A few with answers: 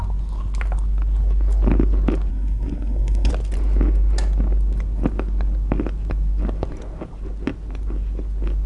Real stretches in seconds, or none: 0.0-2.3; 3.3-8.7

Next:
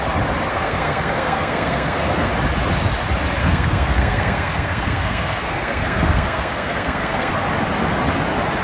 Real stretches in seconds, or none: 0.0-0.5; 2.3-3.4; 7.3-8.6

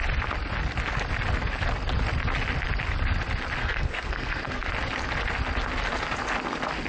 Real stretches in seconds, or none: 0.0-3.6; 4.7-6.9

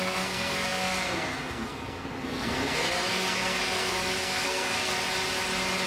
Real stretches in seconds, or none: 4.9-5.9

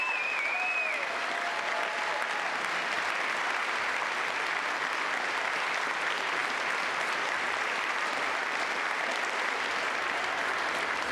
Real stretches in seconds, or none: 0.0-11.1

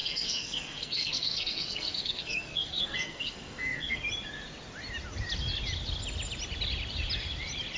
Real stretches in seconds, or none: 4.0-7.8

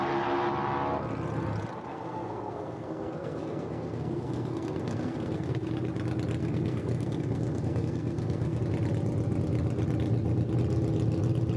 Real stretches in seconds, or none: 0.0-1.9; 5.7-6.4; 8.6-11.6